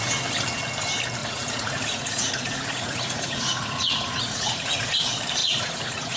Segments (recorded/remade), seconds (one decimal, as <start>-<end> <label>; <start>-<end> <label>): 0.0-1.2 recorded; 1.2-4.9 remade; 4.9-5.4 recorded; 5.4-6.2 remade